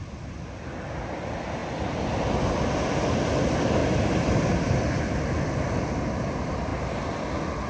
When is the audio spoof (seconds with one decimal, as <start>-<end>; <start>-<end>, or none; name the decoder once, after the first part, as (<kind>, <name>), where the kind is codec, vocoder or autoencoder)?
3.8-5.8 (vocoder, BigVGAN v2); 6.7-7.2